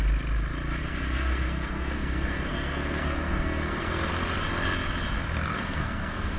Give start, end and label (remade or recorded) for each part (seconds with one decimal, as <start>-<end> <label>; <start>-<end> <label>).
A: 0.0-0.8 recorded; 0.8-4.1 remade; 4.1-5.5 recorded; 5.5-6.4 remade